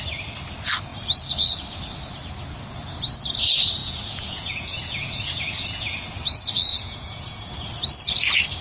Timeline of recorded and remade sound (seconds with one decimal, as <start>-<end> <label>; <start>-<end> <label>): 0.0-3.8 recorded; 3.8-6.0 remade; 6.0-6.7 recorded; 6.7-7.5 remade; 7.5-8.6 recorded